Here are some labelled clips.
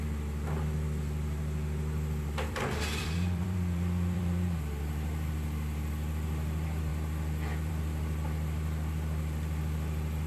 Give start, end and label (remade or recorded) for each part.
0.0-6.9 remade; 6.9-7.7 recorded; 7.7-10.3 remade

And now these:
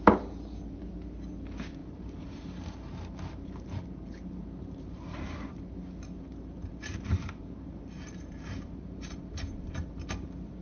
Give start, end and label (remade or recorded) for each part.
0.0-1.8 recorded; 1.8-5.5 remade; 5.5-6.3 recorded; 6.3-9.3 remade; 9.3-10.6 recorded

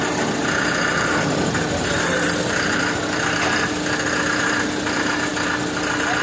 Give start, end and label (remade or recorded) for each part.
0.0-6.2 recorded

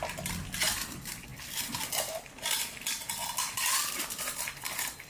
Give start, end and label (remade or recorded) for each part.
0.0-5.1 recorded

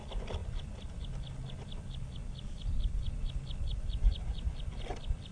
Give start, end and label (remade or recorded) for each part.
0.0-5.3 recorded

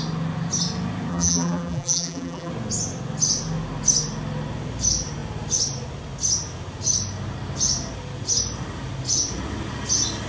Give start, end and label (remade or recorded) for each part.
0.0-1.1 recorded; 1.1-2.5 remade; 2.5-10.3 recorded